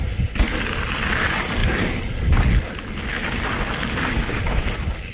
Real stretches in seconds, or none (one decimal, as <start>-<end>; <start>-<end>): 0.0-5.1